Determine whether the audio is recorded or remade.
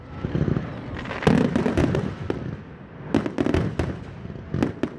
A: recorded